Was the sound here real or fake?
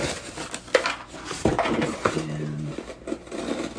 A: real